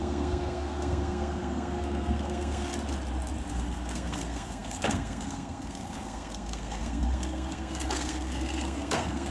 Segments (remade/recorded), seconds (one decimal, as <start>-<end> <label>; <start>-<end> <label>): 0.0-2.7 remade; 2.7-3.5 recorded; 3.5-9.3 remade